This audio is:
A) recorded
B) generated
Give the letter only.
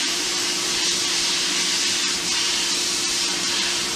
B